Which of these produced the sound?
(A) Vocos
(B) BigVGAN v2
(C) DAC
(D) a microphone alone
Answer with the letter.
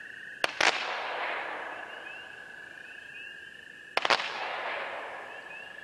D